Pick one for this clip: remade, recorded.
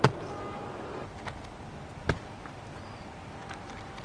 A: recorded